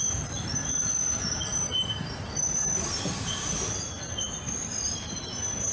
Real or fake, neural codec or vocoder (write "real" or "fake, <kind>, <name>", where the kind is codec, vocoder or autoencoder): real